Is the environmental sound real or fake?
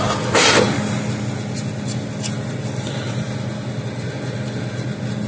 real